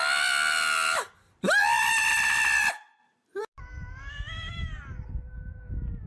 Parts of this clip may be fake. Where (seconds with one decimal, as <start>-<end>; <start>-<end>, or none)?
1.6-4.5